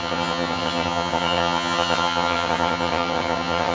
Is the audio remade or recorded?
remade